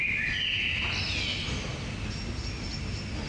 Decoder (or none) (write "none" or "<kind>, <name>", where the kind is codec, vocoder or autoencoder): none